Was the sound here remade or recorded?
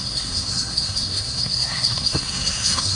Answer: remade